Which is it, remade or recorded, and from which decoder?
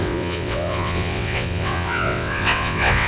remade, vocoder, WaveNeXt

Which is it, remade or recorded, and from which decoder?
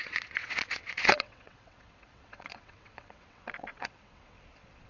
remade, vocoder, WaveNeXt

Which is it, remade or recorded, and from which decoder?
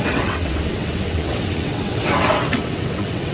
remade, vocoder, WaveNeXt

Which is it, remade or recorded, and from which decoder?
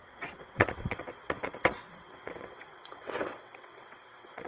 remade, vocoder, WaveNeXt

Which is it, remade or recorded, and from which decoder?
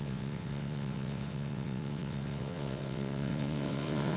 remade, vocoder, WaveNeXt